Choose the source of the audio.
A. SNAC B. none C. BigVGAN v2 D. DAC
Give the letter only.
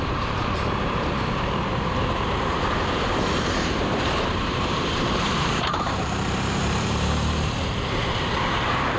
C